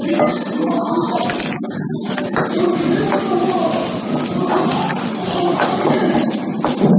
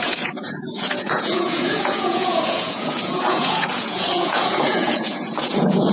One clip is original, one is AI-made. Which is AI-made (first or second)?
second